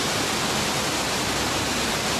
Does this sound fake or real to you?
fake